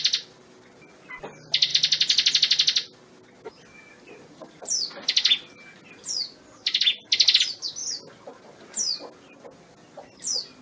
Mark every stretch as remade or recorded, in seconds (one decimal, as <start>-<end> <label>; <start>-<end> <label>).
0.0-10.6 recorded